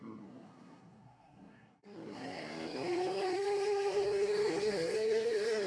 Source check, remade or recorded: remade